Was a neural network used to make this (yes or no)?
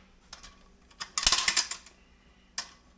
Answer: no